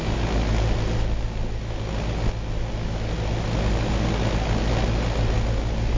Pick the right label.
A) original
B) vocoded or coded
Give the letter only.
A